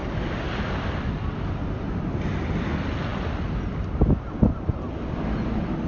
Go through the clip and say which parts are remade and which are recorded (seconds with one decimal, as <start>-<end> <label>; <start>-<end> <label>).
0.0-5.9 recorded